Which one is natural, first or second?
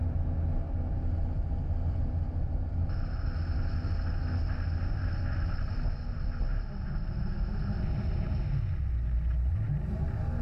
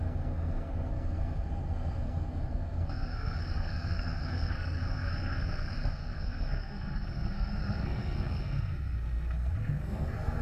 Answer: first